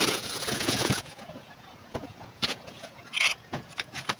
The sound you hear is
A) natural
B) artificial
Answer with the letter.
B